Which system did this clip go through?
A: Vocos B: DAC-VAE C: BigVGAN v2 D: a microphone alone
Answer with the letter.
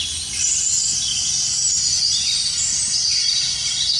D